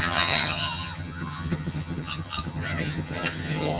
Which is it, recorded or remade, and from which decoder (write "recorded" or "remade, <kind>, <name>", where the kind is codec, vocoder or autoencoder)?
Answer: remade, vocoder, HiFi-GAN